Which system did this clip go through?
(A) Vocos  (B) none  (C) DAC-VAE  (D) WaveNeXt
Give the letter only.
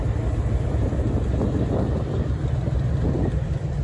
B